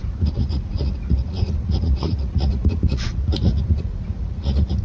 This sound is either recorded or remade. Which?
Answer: remade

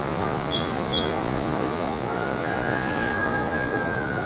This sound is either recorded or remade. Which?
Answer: remade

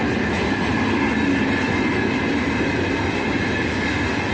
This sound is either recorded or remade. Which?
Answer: recorded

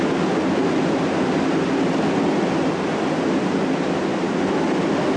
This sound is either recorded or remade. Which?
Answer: recorded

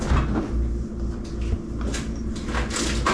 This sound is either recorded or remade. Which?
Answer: recorded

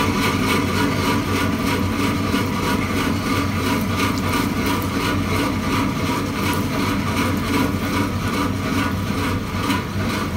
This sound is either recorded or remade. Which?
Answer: recorded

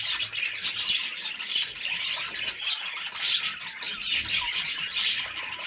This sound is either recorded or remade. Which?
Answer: recorded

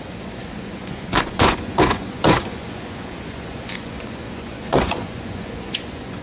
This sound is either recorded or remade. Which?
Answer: remade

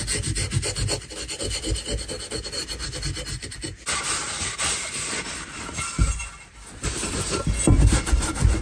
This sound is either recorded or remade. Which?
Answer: recorded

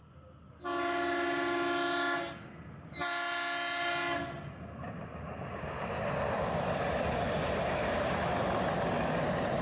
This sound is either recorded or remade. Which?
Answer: recorded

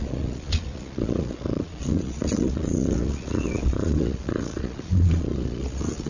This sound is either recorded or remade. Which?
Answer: remade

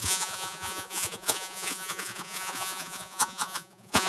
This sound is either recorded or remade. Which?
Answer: remade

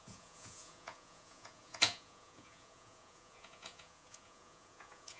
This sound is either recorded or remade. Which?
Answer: remade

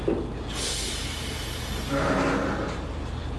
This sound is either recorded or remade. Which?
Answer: recorded